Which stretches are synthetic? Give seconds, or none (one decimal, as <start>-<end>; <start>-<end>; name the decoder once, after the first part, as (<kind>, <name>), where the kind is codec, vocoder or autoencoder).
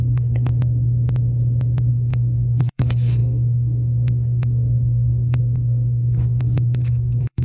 0.0-0.5 (codec, SNAC); 1.9-7.4